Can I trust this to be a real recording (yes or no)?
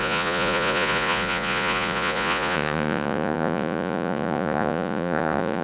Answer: no